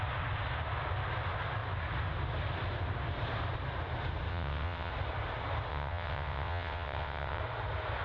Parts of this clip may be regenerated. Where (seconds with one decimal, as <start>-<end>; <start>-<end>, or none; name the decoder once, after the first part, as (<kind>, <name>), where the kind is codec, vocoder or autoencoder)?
4.3-4.9 (vocoder, WaveNeXt); 5.7-7.4